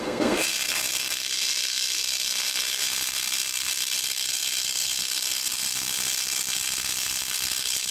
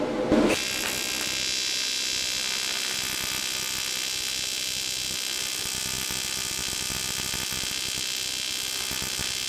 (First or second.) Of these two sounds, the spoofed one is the first